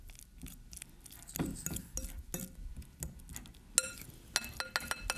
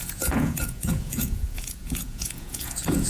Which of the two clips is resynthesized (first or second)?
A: second